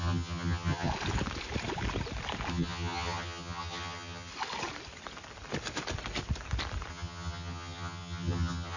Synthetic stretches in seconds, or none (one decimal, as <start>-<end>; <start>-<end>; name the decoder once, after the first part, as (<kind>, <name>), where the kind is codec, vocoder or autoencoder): 0.0-0.9 (vocoder, HiFi-GAN); 2.5-4.3; 6.9-8.8